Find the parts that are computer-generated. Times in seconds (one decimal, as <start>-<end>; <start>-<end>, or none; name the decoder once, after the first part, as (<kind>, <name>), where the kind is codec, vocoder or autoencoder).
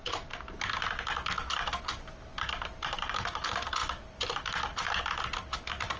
3.8-6.0 (vocoder, BigVGAN v2)